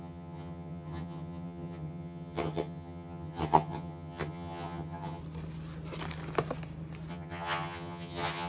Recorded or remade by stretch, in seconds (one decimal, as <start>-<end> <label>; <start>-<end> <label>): 0.0-5.2 remade; 5.2-7.1 recorded; 7.1-8.5 remade